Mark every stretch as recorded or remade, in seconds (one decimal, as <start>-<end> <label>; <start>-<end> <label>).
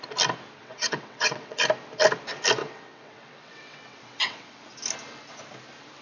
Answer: 0.0-0.6 recorded; 0.6-1.6 remade; 1.6-2.6 recorded; 2.6-4.6 remade; 4.6-6.0 recorded